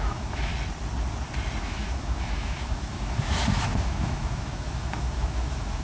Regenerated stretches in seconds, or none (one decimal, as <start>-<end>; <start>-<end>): 0.0-0.5; 1.6-5.8